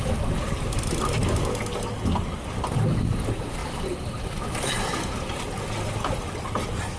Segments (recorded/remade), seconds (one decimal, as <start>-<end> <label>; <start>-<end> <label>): 0.0-7.0 recorded